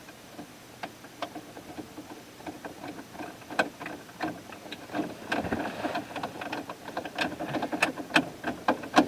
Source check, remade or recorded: recorded